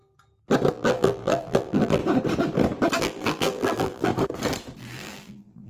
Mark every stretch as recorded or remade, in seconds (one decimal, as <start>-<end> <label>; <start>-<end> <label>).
0.0-0.7 recorded; 0.7-2.0 remade; 2.0-3.0 recorded; 3.0-4.1 remade; 4.1-4.8 recorded; 4.8-5.7 remade